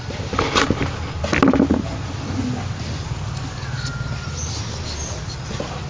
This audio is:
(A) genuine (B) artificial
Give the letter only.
A